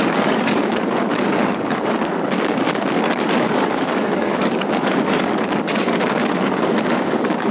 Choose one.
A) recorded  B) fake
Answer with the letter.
B